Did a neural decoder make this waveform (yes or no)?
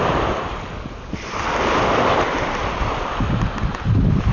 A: no